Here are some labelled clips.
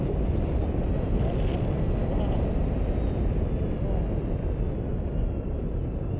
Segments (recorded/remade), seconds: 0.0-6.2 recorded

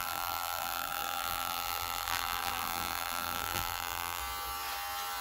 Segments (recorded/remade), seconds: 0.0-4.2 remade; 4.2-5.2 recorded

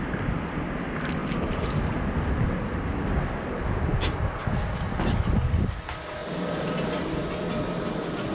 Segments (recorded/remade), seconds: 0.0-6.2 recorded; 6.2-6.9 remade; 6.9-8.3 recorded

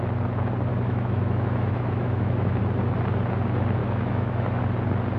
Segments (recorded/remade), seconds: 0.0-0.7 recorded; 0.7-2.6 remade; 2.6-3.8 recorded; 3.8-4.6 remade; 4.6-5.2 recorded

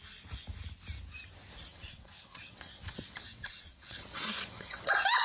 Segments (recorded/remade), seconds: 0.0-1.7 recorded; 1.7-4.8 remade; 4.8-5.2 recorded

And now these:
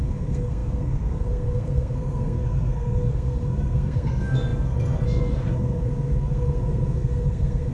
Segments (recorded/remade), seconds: 0.0-7.7 remade

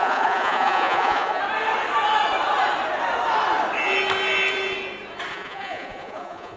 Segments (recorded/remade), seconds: 0.0-1.4 remade; 1.4-5.3 recorded; 5.3-6.6 remade